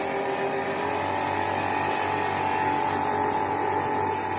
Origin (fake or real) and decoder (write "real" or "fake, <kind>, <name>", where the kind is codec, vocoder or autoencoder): real